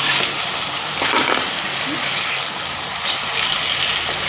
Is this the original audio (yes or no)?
yes